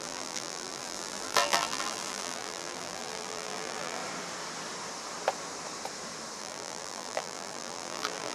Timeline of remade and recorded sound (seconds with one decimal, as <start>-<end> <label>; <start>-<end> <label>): 0.0-4.0 remade; 4.0-6.4 recorded; 6.4-8.3 remade